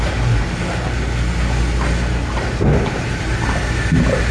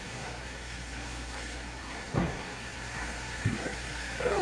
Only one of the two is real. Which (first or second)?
first